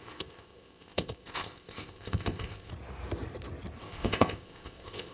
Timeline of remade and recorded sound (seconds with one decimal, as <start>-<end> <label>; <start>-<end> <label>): 0.0-2.7 remade; 2.7-3.8 recorded; 3.8-5.1 remade

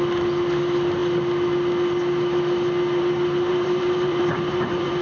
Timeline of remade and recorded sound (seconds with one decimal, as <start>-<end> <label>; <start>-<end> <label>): 0.0-3.5 recorded; 3.5-5.0 remade